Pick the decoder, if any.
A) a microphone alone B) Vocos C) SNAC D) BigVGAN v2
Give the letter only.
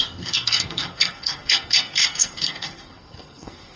C